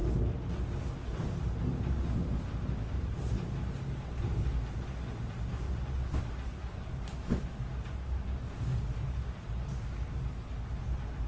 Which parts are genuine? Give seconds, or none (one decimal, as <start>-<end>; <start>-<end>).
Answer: 0.0-11.3